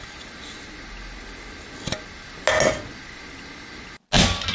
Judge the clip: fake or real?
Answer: real